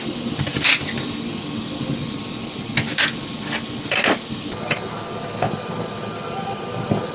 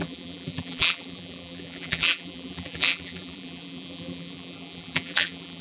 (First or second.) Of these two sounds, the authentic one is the first